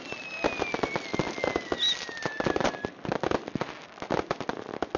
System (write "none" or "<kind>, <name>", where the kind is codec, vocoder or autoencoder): none